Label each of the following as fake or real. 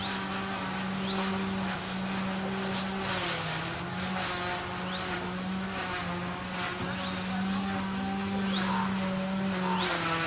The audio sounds real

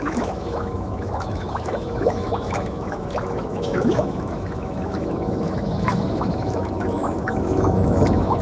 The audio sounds fake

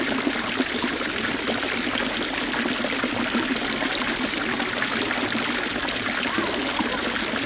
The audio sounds real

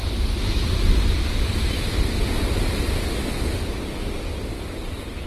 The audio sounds real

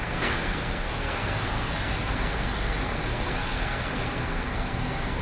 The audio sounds fake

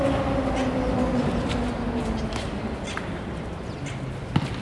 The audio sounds real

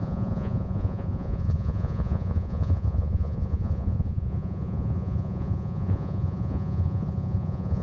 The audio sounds fake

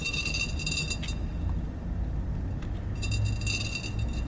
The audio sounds real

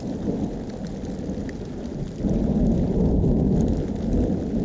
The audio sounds real